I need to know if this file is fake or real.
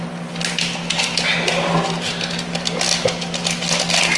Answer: real